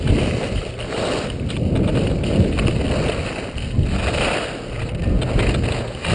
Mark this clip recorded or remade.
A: recorded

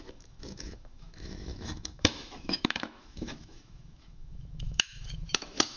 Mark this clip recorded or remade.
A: remade